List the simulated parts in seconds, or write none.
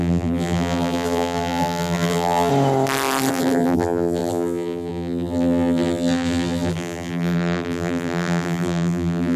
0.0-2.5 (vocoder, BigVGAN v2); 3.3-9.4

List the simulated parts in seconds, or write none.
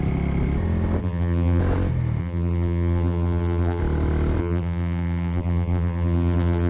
1.0-1.6 (vocoder, BigVGAN v2); 2.2-3.8; 4.4-6.7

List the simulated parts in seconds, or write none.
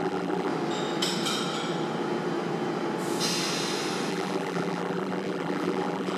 0.0-0.5 (vocoder, BigVGAN v2); 4.1-6.2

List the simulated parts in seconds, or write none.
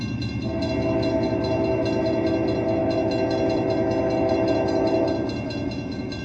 none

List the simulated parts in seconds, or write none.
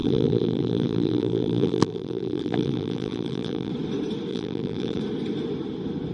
0.0-3.7 (vocoder, BigVGAN v2); 4.3-5.0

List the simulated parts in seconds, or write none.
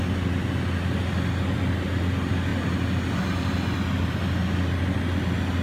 none